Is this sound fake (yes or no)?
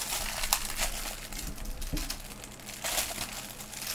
no